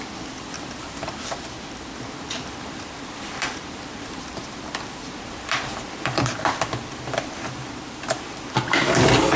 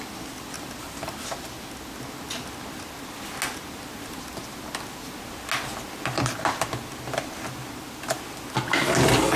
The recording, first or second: second